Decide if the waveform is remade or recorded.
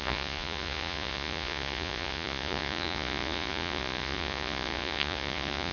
remade